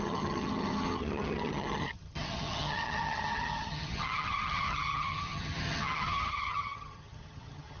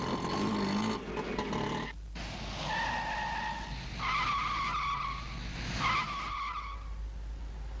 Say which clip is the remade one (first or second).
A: first